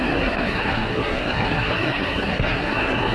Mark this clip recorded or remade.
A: remade